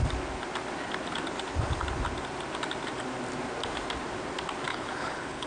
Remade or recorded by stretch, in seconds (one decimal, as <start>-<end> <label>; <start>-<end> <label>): 0.0-4.7 recorded; 4.7-5.5 remade